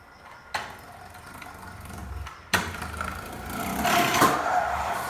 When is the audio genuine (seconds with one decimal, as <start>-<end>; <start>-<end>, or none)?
0.0-2.0

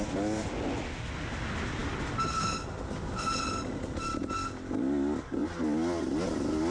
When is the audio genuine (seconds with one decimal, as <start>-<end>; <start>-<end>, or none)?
0.0-6.7

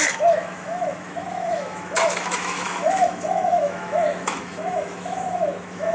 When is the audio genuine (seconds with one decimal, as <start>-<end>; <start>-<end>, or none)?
none

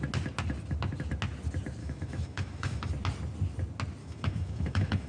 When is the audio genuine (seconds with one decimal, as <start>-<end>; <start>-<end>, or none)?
0.0-1.8; 2.9-4.0

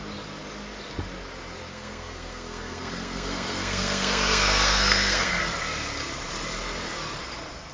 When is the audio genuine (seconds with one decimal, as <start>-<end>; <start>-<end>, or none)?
0.0-1.7; 5.4-7.7

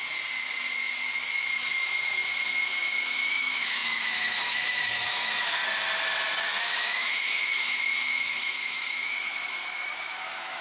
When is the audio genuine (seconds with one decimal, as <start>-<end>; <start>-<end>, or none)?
0.0-1.4; 5.6-6.6